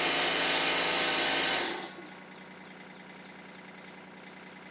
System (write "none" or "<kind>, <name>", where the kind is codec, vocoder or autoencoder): none